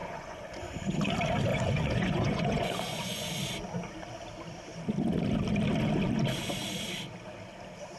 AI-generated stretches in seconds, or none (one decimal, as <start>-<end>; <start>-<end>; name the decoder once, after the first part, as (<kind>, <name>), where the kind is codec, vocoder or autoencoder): 0.0-1.1 (vocoder, Vocos); 1.5-3.3

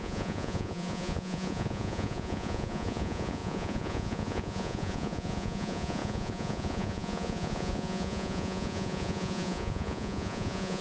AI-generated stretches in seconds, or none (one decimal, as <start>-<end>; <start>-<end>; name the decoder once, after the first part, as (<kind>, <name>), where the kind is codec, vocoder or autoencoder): 0.0-10.8 (vocoder, Vocos)

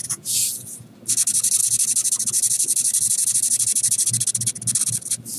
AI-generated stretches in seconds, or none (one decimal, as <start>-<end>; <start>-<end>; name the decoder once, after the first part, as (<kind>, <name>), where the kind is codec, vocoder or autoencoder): 0.0-0.9 (vocoder, Vocos)

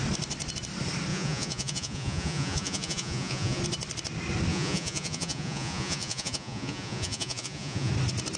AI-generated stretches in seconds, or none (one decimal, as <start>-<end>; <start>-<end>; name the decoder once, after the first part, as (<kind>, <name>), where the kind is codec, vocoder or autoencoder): 1.1-3.6 (vocoder, Vocos); 4.5-7.9

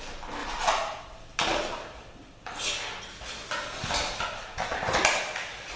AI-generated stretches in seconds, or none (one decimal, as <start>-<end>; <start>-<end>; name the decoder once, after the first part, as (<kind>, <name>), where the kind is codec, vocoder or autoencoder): none

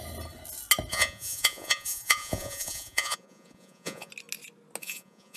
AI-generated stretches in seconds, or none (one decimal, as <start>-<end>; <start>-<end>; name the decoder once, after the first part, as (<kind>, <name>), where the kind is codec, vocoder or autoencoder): 0.9-4.1 (vocoder, Vocos); 4.8-5.4

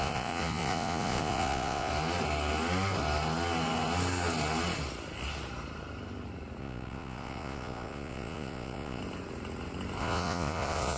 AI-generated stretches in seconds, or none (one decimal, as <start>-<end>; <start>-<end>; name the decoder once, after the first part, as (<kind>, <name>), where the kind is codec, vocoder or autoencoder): 0.0-1.9 (vocoder, Vocos); 6.6-9.0; 10.0-11.0

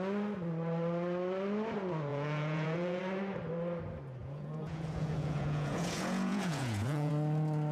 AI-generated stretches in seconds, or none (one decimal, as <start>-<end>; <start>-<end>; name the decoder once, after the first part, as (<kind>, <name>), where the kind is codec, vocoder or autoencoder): 2.1-3.0 (vocoder, Vocos); 4.2-7.1